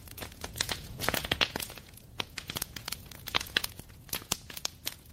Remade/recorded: remade